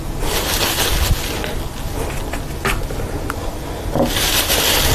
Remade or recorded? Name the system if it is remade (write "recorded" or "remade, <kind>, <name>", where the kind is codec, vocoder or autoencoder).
recorded